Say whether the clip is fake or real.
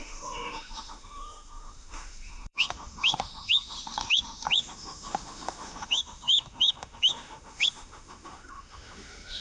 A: fake